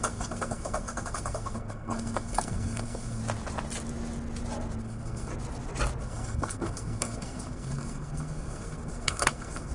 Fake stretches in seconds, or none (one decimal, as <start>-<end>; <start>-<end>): 0.0-3.2; 4.8-5.3; 6.0-9.7